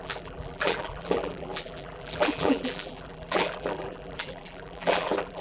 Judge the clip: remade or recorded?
remade